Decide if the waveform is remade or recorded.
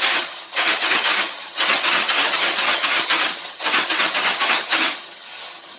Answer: remade